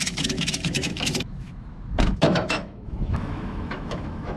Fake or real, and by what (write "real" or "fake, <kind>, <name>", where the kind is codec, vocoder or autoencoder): fake, autoencoder, DAC-VAE